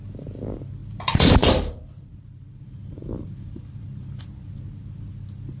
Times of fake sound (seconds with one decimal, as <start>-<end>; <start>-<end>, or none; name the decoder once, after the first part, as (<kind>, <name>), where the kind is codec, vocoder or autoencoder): 0.8-4.2 (vocoder, BigVGAN v2)